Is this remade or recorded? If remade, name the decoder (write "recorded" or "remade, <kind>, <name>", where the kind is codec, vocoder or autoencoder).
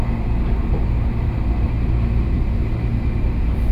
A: recorded